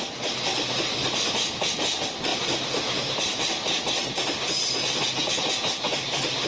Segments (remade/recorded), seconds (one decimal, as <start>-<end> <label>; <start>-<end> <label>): 0.0-6.5 recorded